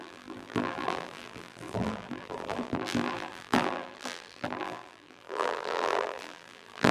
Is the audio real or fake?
fake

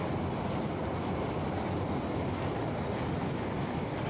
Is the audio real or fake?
real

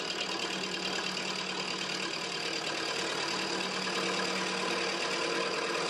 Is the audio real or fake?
real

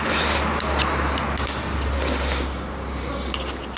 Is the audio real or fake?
real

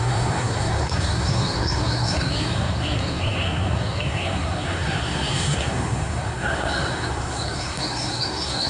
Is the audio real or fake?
fake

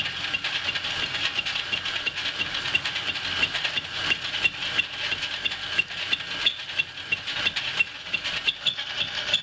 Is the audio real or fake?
real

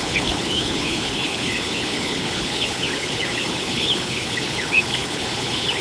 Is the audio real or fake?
fake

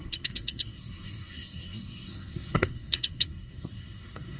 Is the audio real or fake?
fake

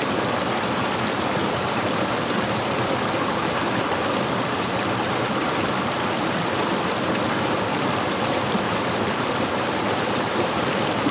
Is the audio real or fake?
fake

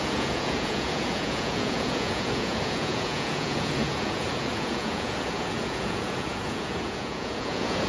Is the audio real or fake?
fake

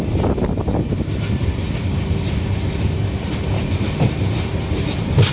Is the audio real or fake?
real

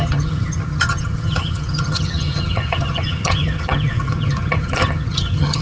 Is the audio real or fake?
fake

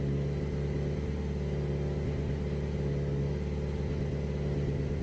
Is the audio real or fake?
real